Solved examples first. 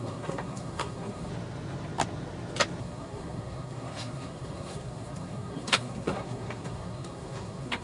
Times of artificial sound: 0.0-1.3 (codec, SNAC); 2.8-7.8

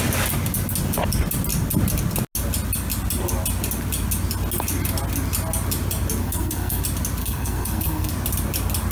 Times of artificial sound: 6.2-6.8 (codec, SNAC); 7.2-8.1

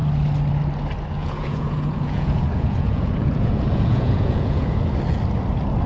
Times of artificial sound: 1.2-4.7 (vocoder, Vocos)

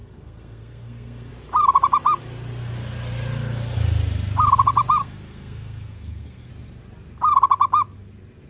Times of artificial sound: 0.0-1.3 (codec, SNAC); 5.0-6.5

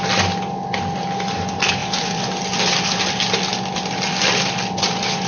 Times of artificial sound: none

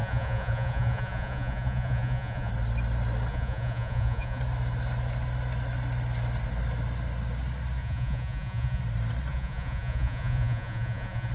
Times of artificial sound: 0.0-2.5 (vocoder, Vocos); 3.3-4.4; 7.8-8.8; 9.3-11.3

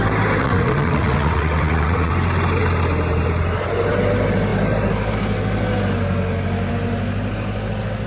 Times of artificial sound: 0.4-2.1 (vocoder, WaveNeXt)

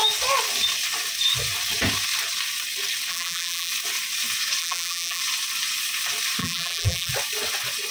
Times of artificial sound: 3.1-3.7 (vocoder, BigVGAN v2); 4.6-5.2; 6.4-7.1